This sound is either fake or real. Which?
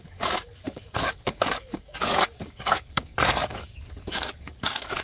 fake